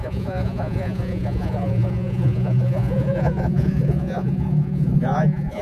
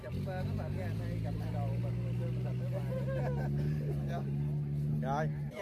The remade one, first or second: first